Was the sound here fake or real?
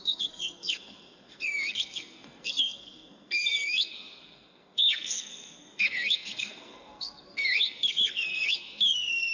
fake